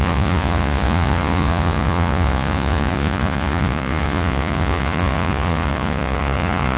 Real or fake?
fake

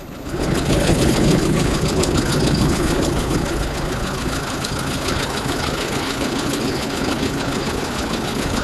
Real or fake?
fake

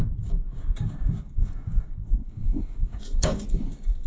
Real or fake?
fake